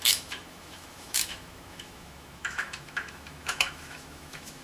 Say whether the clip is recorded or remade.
remade